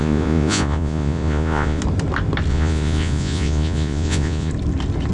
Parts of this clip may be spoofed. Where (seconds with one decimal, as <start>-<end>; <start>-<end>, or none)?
0.0-1.8; 2.5-4.5